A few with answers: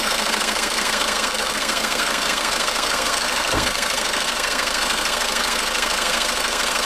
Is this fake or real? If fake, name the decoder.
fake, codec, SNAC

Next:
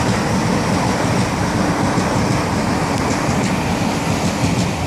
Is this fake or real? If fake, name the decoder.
real